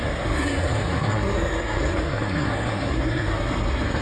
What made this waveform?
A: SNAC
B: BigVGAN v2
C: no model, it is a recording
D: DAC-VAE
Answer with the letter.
A